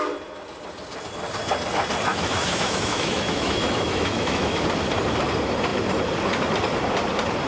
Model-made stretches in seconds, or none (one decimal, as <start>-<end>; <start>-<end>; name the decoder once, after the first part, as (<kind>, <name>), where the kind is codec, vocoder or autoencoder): 2.1-4.6 (autoencoder, DAC-VAE)